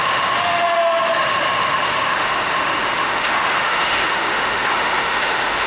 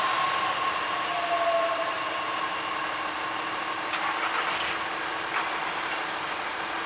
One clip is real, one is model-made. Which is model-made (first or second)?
first